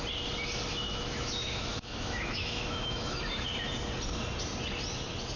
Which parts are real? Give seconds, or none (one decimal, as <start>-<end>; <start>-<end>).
0.0-0.7; 3.2-5.4